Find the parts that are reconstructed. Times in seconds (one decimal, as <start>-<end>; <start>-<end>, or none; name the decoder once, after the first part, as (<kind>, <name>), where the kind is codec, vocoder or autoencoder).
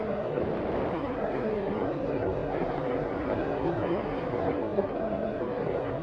0.0-0.4 (codec, SNAC); 0.9-6.0